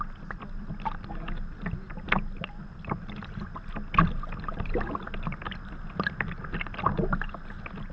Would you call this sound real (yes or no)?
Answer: yes